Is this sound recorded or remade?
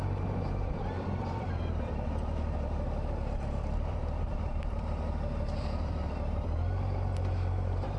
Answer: remade